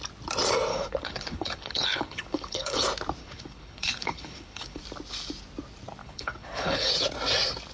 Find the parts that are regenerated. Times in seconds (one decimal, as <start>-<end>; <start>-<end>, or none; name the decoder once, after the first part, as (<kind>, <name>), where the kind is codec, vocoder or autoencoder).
0.7-2.8 (codec, HILCodec); 3.2-4.8; 6.0-6.9